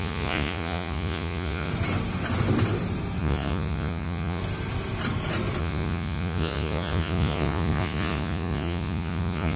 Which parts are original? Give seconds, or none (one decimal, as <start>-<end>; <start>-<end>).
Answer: 1.7-3.2; 4.4-5.6

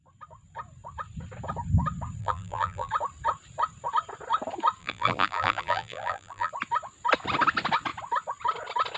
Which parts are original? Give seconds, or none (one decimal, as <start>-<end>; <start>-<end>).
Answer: 0.0-2.2; 2.9-4.8; 6.5-9.0

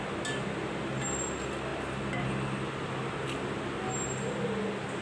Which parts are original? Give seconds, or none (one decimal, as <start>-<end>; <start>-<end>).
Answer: 0.0-5.0

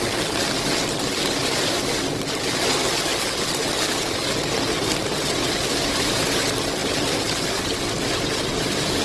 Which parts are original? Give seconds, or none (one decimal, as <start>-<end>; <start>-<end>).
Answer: 0.0-9.0